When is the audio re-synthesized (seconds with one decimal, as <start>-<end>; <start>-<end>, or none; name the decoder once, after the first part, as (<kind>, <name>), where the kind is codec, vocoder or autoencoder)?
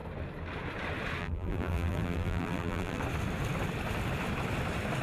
1.2-3.0 (vocoder, BigVGAN v2)